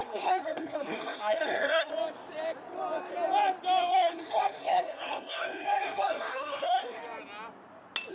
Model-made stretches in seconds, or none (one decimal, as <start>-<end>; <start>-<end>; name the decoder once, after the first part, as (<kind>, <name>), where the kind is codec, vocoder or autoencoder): 0.0-1.9 (codec, SNAC); 3.9-7.0